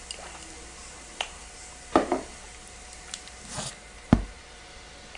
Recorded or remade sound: remade